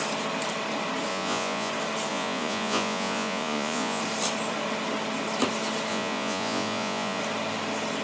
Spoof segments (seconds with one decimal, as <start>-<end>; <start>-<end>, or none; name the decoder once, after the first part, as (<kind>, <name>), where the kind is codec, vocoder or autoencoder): 1.1-1.7 (vocoder, Vocos); 2.1-4.0; 5.9-7.2